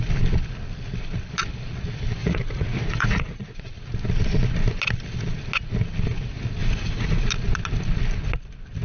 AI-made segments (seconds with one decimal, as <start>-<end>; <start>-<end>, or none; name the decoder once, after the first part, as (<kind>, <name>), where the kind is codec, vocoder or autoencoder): 2.2-3.6 (vocoder, Vocos); 6.6-7.3